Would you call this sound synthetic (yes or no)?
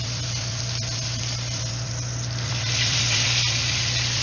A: yes